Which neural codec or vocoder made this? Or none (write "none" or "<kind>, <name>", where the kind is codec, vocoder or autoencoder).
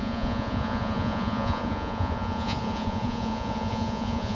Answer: vocoder, Vocos